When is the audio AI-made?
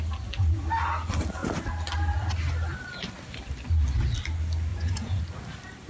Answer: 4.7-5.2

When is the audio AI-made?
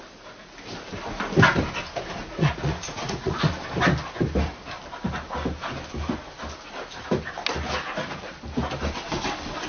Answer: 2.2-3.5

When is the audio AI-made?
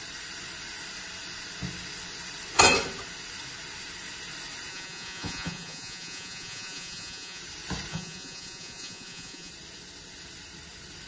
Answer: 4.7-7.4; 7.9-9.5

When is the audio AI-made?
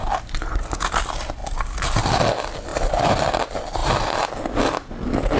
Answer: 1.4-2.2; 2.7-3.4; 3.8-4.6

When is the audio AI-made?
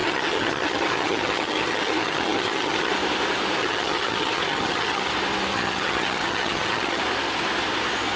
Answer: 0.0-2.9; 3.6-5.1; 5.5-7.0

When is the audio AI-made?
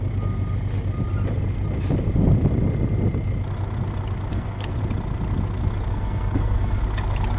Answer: 4.3-4.8; 5.9-6.8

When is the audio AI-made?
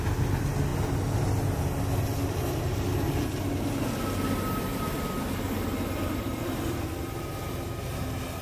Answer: none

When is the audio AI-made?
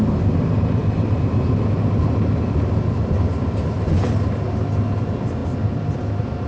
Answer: none